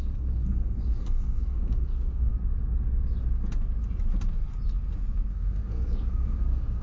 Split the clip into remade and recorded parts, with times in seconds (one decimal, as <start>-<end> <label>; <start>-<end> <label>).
0.0-2.3 remade; 2.3-5.3 recorded; 5.3-6.8 remade